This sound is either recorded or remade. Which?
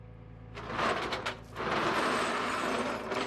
recorded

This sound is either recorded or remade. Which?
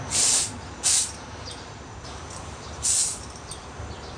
remade